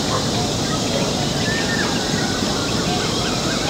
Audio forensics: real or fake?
real